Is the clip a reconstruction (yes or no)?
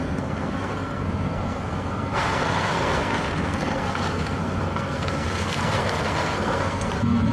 yes